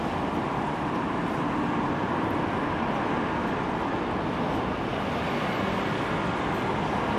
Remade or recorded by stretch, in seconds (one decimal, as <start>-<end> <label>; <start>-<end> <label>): 0.0-7.2 recorded